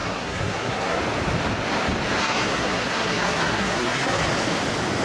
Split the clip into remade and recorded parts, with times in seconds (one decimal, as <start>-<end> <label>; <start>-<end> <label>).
0.0-1.0 remade; 1.0-2.2 recorded; 2.2-4.2 remade; 4.2-5.0 recorded